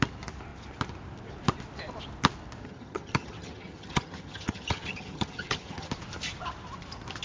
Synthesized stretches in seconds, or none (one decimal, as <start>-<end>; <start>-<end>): 2.6-5.9